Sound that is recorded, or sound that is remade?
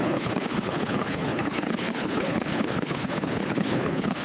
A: remade